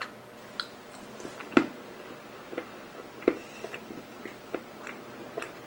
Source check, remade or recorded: recorded